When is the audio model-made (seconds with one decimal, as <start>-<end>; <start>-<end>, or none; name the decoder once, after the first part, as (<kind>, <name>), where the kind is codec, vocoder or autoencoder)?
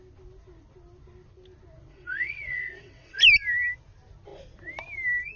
1.9-3.2 (vocoder, WaveNeXt)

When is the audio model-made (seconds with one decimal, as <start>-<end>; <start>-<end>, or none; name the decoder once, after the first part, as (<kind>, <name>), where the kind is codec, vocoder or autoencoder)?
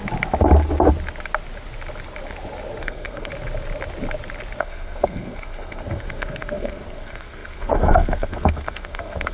2.8-3.3 (codec, SNAC); 4.6-9.3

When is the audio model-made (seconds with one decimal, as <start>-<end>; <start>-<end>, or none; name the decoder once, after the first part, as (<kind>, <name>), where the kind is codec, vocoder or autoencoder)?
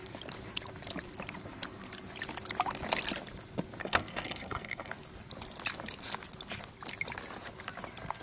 3.8-4.9 (codec, SNAC)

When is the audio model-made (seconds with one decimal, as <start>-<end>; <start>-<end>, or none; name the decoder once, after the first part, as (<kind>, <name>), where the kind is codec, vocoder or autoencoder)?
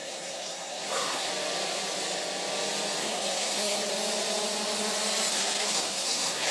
0.0-1.3 (codec, SNAC); 3.0-3.9; 5.3-6.5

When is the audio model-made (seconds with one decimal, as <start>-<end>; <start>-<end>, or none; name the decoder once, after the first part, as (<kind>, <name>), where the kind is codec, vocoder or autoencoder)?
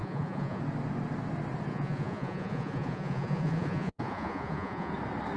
0.0-0.6 (vocoder, Vocos); 1.7-4.9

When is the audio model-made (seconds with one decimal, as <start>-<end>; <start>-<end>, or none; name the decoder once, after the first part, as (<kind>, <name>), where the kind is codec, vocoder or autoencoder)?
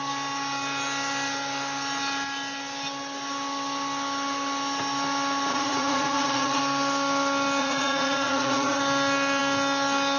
5.5-6.6 (vocoder, Vocos); 7.6-8.8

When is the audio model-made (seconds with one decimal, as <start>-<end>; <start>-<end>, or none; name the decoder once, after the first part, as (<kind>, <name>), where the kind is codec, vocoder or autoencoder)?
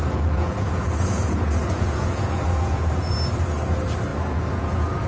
0.0-3.1 (vocoder, Vocos); 4.1-5.1